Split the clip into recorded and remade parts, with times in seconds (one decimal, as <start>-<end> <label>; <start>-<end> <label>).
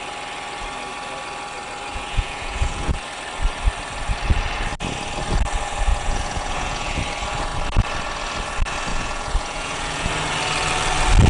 0.0-1.9 recorded; 1.9-3.0 remade; 3.0-5.9 recorded; 5.9-7.0 remade; 7.0-8.9 recorded; 8.9-10.1 remade; 10.1-11.3 recorded